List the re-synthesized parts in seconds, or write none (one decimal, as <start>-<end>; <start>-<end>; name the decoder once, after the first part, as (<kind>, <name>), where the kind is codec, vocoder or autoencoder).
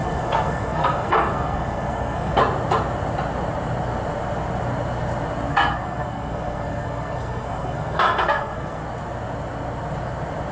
0.0-2.4 (codec, SNAC); 5.5-8.8